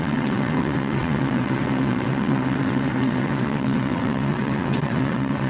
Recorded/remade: remade